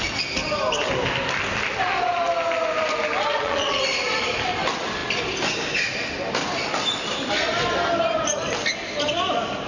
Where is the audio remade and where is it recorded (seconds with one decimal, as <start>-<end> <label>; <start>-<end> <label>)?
0.0-3.3 recorded; 3.3-3.8 remade; 3.8-9.7 recorded